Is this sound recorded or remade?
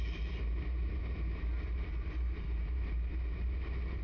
remade